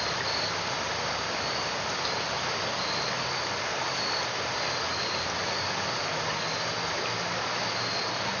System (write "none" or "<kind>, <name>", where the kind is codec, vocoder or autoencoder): none